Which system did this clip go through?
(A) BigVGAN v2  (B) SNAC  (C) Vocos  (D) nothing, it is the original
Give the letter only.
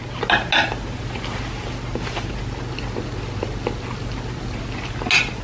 D